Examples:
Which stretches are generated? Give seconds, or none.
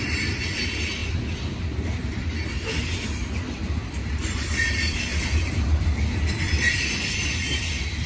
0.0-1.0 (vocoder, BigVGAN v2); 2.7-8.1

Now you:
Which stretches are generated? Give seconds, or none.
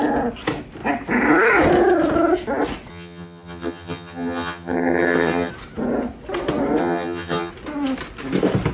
2.9-5.5 (vocoder, HiFi-GAN); 6.8-7.5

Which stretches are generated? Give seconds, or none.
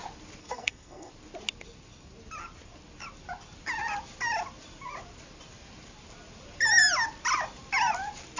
0.4-1.1 (codec, SNAC)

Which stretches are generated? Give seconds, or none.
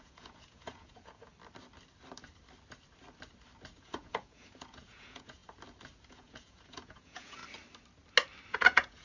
0.0-1.3 (vocoder, Vocos); 3.8-5.4; 6.1-7.4; 8.5-9.0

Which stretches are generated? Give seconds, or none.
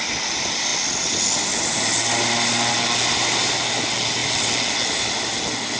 none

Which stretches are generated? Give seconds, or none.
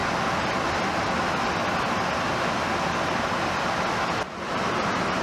none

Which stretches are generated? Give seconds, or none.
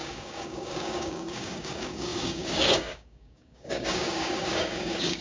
0.0-5.2 (codec, DAC)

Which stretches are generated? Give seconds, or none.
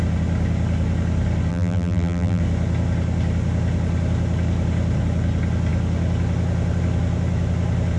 1.5-2.4 (vocoder, BigVGAN v2)